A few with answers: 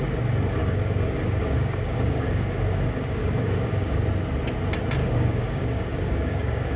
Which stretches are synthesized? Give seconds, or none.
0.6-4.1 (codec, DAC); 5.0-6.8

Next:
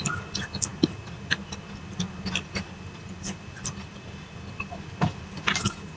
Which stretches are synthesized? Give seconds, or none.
none

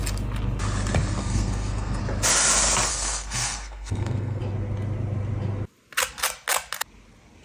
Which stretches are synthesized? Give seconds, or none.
1.2-2.0 (codec, SNAC); 2.9-4.4

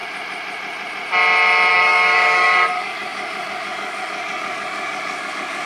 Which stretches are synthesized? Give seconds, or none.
1.7-5.7 (codec, DAC)